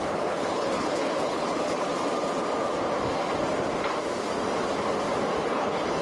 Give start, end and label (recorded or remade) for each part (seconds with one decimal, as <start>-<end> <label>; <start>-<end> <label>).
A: 0.0-1.9 remade; 1.9-5.5 recorded; 5.5-6.0 remade